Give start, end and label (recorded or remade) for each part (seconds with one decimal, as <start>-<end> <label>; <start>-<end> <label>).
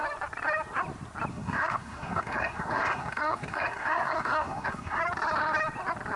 0.0-1.3 recorded; 1.3-5.0 remade; 5.0-6.2 recorded